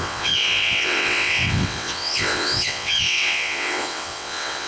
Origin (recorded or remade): remade